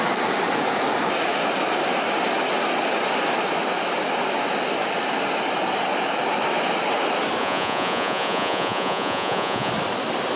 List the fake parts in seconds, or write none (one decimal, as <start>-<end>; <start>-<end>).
7.4-9.7